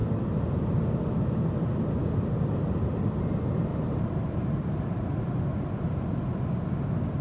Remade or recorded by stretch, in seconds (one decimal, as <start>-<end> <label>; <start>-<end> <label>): 0.0-3.7 recorded; 3.7-5.1 remade; 5.1-7.2 recorded